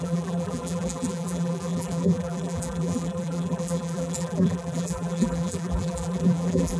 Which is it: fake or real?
fake